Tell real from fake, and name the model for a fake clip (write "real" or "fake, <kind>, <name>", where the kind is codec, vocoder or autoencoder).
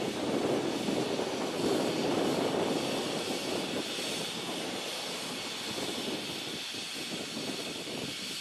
real